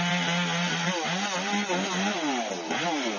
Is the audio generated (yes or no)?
no